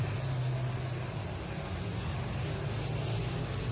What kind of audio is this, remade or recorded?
recorded